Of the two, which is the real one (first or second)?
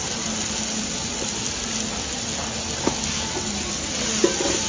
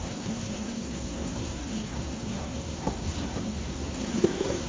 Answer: first